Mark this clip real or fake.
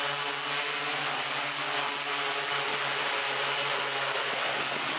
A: real